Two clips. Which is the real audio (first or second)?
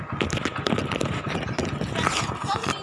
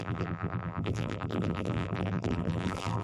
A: first